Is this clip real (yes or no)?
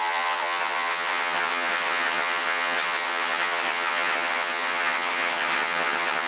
no